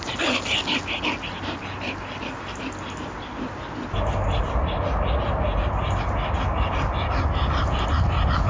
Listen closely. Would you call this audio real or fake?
real